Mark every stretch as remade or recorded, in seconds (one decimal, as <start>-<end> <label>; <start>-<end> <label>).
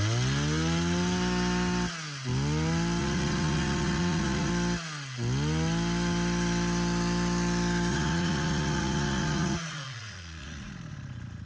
0.0-3.0 recorded; 3.0-4.5 remade; 4.5-7.9 recorded; 7.9-10.7 remade; 10.7-11.5 recorded